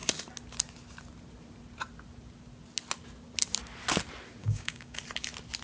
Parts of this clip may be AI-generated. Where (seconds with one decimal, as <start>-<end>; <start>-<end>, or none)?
4.4-5.0